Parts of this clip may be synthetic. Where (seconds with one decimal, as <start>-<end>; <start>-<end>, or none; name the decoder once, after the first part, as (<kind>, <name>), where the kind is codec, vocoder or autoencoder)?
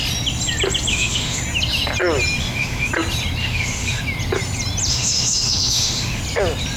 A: 0.9-1.4 (autoencoder, DAC-VAE); 2.4-2.9; 3.4-4.0; 4.9-6.2